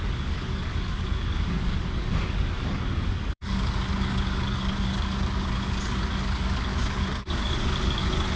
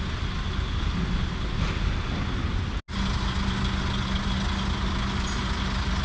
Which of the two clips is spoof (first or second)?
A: first